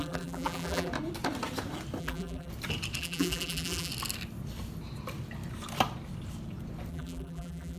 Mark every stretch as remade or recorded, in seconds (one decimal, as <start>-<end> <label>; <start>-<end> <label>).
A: 0.0-0.9 remade; 0.9-2.0 recorded; 2.0-2.5 remade; 2.5-3.0 recorded; 3.0-3.9 remade; 3.9-6.9 recorded; 6.9-7.8 remade